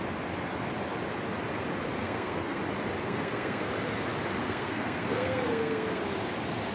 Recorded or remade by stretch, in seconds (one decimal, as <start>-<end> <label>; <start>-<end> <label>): 0.0-2.0 recorded; 2.0-2.6 remade; 2.6-3.0 recorded; 3.0-3.7 remade; 3.7-4.4 recorded; 4.4-6.0 remade; 6.0-6.7 recorded